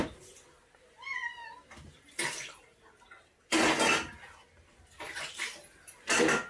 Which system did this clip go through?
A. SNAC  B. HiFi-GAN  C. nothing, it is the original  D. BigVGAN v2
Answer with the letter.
C